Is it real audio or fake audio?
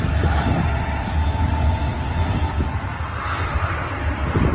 real